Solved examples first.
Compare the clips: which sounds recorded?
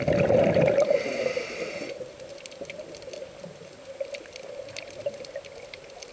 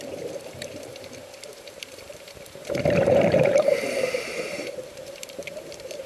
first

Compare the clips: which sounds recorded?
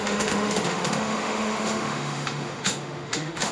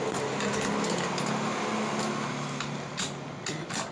second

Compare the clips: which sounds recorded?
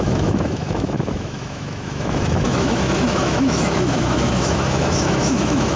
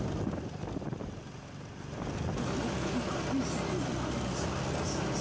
second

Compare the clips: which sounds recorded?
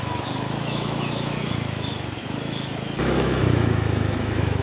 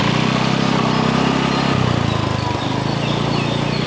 second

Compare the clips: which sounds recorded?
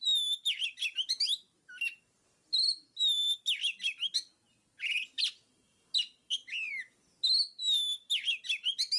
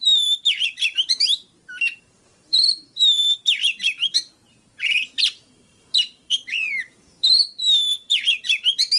first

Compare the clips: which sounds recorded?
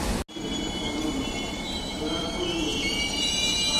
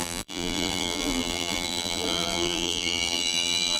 first